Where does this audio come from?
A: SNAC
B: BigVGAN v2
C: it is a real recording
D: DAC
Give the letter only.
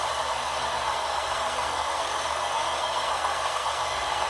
A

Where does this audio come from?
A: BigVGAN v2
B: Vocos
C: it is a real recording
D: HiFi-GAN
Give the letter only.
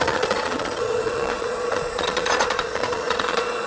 B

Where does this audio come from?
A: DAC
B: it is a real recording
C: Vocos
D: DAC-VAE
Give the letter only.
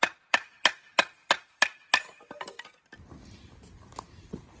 B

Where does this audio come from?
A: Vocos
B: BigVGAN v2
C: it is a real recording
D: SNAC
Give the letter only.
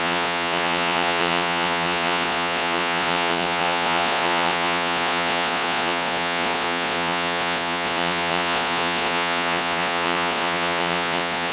A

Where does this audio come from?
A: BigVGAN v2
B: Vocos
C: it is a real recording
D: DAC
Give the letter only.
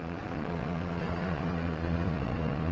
B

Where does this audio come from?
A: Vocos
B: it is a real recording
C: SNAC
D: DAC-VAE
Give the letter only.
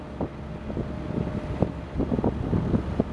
B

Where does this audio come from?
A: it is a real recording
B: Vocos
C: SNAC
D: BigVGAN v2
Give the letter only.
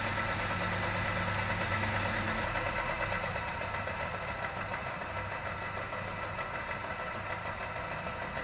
A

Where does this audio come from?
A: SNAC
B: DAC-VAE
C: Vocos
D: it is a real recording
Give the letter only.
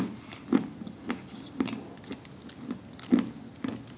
D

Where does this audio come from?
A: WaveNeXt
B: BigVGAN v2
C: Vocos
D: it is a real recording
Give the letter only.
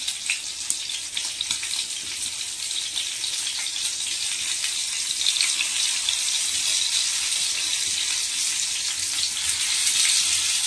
D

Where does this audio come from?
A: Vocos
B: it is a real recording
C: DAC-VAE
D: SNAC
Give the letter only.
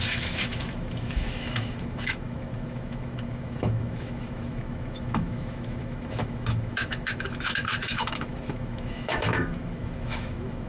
C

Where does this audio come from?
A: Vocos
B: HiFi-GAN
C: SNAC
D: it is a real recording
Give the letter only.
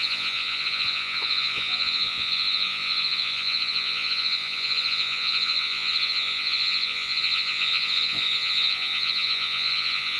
A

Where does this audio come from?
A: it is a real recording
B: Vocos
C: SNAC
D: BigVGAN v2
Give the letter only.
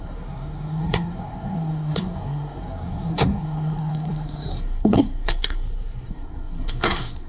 C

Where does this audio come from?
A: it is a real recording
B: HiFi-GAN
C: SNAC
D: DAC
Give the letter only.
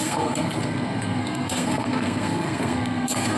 C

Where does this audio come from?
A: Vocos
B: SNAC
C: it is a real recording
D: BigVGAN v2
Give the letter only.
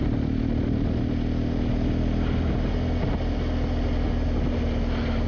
C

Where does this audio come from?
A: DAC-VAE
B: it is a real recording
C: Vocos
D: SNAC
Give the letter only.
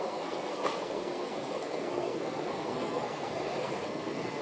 D